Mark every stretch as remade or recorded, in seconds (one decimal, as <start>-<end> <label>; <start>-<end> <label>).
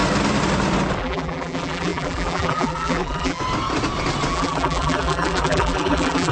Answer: 0.0-1.0 recorded; 1.0-3.4 remade; 3.4-4.3 recorded; 4.3-6.3 remade